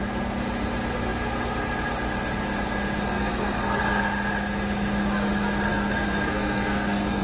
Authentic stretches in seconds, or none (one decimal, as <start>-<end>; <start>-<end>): 0.0-3.1; 3.8-5.7